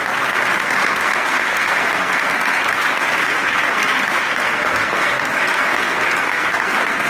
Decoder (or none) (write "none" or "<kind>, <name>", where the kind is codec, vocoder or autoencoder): codec, SNAC